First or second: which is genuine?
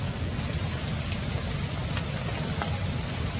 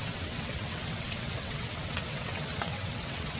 first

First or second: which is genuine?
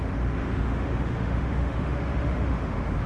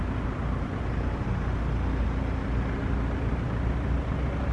second